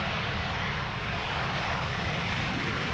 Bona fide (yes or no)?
no